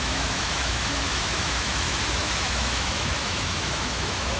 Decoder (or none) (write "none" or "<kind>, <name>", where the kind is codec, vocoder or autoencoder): autoencoder, DAC-VAE